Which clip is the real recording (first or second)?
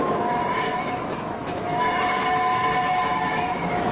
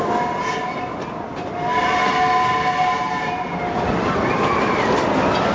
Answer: second